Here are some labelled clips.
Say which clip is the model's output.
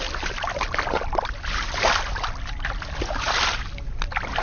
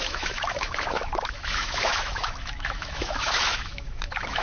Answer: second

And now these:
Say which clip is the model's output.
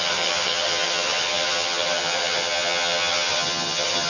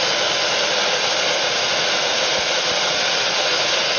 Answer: first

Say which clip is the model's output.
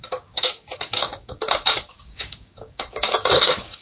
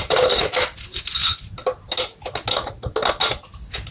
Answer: first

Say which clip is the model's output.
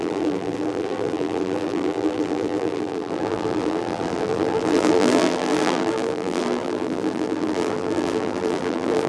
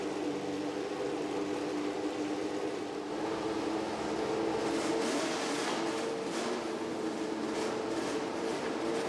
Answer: first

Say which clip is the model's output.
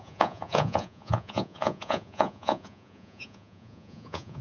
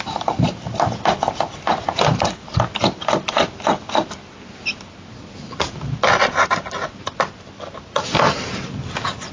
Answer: first